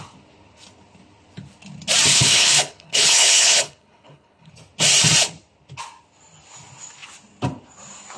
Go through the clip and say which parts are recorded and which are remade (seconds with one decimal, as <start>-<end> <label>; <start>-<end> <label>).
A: 0.0-2.1 recorded; 2.1-4.5 remade; 4.5-8.2 recorded